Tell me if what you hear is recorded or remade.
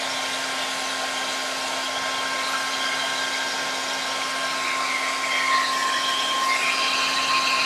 recorded